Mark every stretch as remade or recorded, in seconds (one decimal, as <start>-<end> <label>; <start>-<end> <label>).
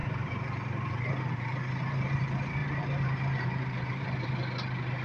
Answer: 0.0-2.2 remade; 2.2-2.6 recorded; 2.6-4.3 remade; 4.3-5.0 recorded